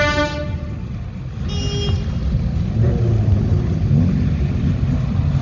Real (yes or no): yes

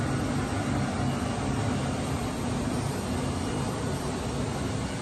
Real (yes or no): yes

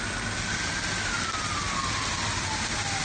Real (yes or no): yes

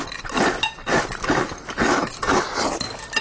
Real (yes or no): yes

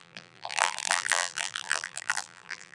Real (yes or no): no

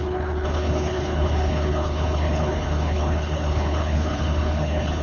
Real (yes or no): no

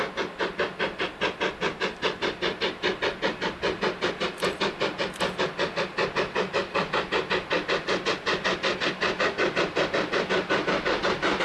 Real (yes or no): yes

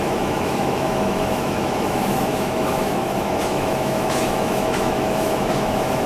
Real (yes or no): no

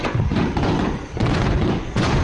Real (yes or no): no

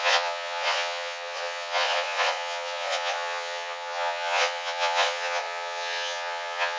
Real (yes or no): no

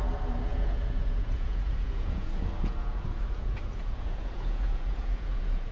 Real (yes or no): no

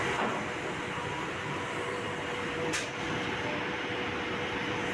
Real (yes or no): no